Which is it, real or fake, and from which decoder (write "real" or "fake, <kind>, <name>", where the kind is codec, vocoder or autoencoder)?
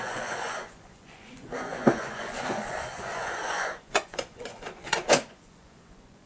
fake, vocoder, Vocos